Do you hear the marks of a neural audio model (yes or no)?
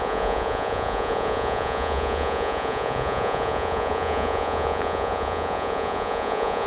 yes